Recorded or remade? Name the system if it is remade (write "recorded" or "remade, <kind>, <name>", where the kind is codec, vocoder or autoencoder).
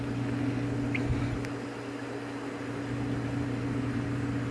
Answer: recorded